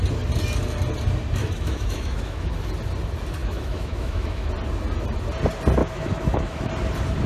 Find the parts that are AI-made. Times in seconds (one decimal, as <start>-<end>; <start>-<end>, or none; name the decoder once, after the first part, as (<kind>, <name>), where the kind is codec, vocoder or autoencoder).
1.4-2.5 (autoencoder, DAC-VAE); 3.4-4.5; 5.8-6.7